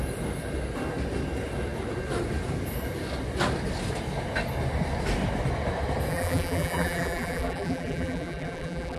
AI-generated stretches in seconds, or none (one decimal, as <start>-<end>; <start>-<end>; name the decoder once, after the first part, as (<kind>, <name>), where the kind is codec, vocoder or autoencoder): 6.1-9.0 (vocoder, BigVGAN v2)